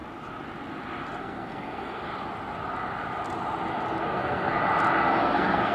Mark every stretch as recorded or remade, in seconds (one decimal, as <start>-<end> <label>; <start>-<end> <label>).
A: 0.0-1.2 recorded; 1.2-2.1 remade; 2.1-4.0 recorded; 4.0-4.6 remade; 4.6-5.2 recorded; 5.2-5.7 remade